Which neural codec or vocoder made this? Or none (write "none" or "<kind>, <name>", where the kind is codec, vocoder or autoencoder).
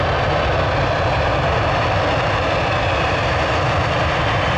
none